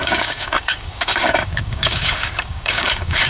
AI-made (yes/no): yes